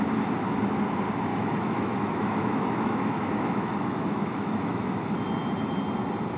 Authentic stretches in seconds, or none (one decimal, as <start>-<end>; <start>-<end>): 0.0-1.3; 5.1-6.4